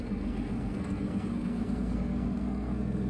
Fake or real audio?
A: fake